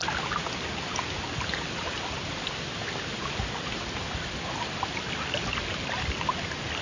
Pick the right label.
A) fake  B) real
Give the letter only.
B